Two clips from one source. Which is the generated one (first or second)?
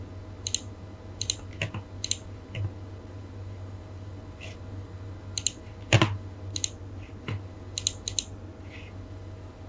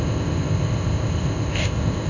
second